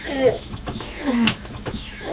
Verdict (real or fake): fake